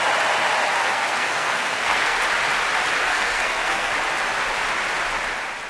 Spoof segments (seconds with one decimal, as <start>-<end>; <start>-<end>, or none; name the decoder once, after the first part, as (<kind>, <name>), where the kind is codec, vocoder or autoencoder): 0.8-2.2 (codec, SNAC); 3.0-3.9

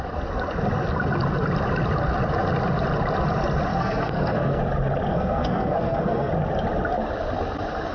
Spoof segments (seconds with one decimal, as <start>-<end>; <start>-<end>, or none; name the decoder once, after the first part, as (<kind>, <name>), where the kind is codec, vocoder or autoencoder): 3.7-4.6 (codec, SNAC); 5.1-6.3

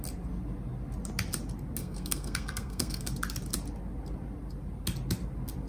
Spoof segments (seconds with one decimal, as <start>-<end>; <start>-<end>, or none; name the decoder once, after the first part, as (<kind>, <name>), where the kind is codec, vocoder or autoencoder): 1.8-3.1 (codec, SNAC)

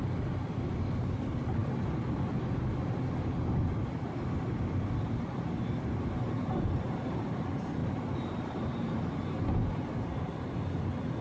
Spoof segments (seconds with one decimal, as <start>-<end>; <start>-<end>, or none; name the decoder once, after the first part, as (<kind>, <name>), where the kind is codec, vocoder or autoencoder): none

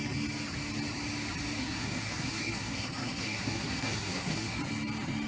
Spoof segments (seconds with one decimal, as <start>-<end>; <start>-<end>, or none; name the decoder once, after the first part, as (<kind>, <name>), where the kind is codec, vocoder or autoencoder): 1.6-4.6 (codec, SNAC)